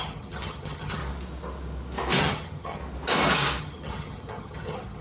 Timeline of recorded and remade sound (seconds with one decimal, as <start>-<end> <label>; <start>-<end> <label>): 0.0-1.0 remade; 1.0-2.2 recorded; 2.2-2.8 remade; 2.8-3.6 recorded; 3.6-5.0 remade